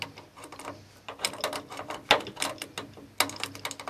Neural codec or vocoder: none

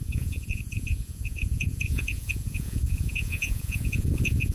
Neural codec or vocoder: vocoder, Vocos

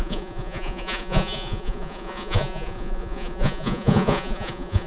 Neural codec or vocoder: vocoder, Vocos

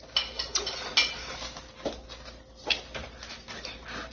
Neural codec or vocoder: none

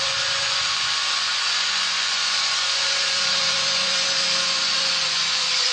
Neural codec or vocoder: vocoder, Vocos